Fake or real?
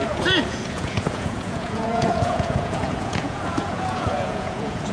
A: fake